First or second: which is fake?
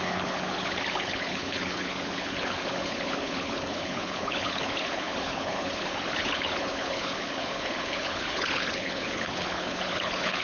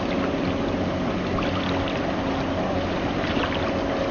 first